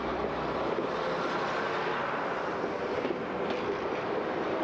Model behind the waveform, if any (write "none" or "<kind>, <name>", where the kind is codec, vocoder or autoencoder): none